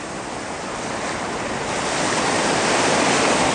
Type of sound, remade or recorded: recorded